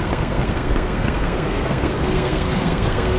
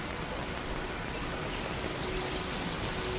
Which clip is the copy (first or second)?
first